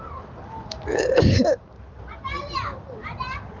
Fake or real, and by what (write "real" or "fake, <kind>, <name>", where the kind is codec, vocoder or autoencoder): real